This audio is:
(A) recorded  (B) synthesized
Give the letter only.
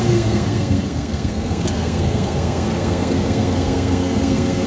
B